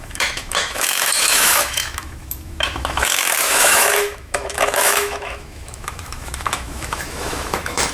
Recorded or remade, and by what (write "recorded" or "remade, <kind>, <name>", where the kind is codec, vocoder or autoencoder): remade, autoencoder, DAC-VAE